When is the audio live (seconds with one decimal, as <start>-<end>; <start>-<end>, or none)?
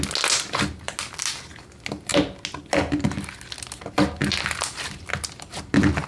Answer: 0.0-6.1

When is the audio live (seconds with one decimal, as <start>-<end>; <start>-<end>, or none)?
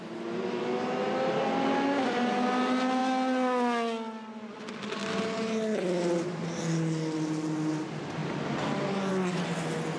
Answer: 0.0-10.0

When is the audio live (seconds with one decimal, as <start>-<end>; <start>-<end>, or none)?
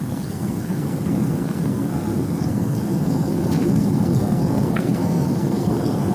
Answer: none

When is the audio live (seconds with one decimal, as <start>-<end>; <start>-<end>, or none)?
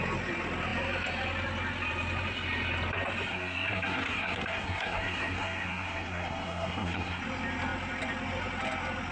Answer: 0.0-3.3; 7.2-9.1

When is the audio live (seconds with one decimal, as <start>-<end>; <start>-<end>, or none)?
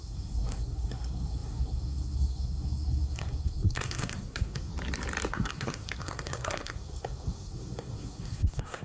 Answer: 4.7-5.3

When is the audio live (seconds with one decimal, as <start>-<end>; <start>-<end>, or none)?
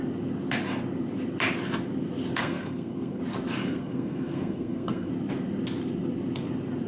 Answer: 0.0-2.4; 3.2-3.6; 5.1-6.9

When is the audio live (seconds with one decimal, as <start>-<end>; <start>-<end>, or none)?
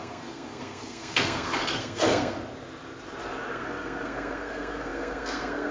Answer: 2.4-3.5